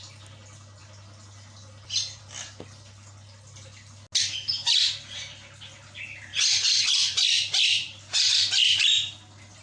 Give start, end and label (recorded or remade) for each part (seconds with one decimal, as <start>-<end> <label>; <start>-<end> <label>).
0.0-6.3 recorded; 6.3-8.3 remade; 8.3-9.6 recorded